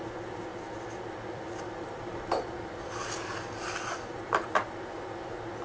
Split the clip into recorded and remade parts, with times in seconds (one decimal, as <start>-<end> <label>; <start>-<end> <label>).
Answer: 0.0-5.6 remade